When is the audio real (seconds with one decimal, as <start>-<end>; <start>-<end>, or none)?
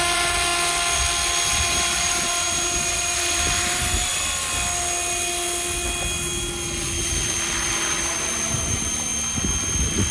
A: 0.5-1.5; 4.1-7.0; 9.1-10.1